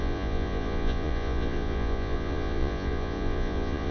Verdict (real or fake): fake